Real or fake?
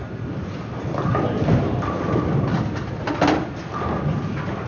real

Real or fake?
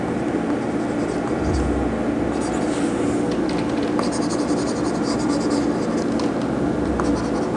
real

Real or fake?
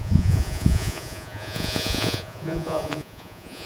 fake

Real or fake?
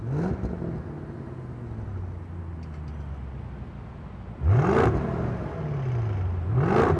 real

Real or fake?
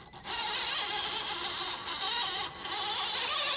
real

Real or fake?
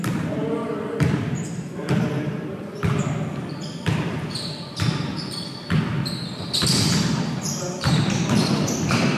fake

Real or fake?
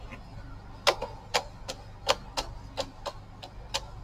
real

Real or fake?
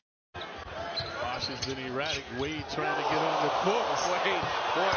real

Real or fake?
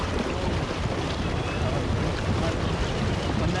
real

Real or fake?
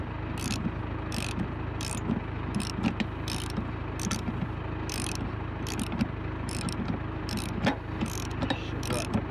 real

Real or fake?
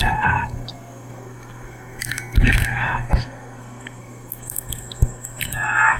fake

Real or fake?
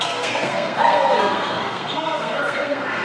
fake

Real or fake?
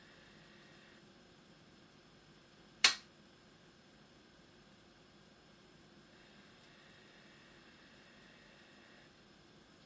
real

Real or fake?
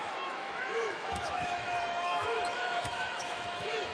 fake